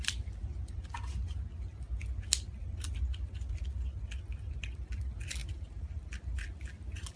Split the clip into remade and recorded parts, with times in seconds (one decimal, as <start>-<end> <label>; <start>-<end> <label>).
0.0-5.4 recorded; 5.4-6.2 remade; 6.2-7.2 recorded